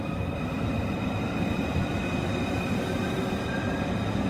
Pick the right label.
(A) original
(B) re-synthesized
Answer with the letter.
B